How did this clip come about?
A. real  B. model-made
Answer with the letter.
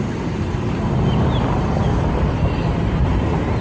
A